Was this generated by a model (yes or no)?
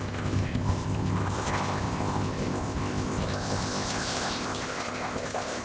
yes